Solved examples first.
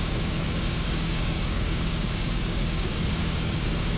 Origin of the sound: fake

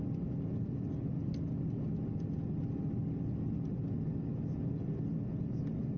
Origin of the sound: real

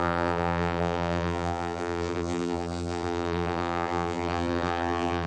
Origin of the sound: fake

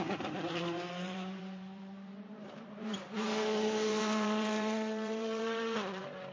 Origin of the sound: fake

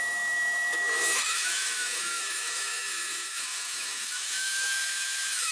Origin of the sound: fake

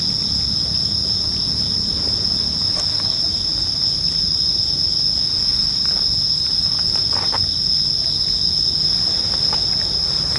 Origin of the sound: real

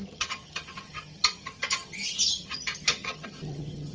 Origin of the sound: fake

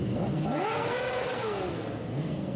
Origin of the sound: fake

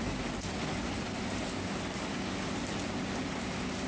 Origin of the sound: real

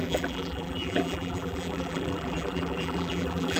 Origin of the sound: fake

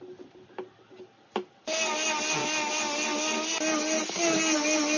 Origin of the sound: real